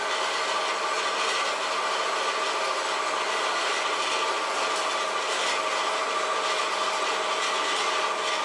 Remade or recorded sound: recorded